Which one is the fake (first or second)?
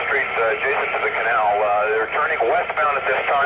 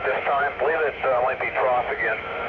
second